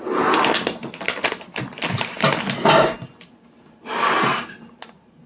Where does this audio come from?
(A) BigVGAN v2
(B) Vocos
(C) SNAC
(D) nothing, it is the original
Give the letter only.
D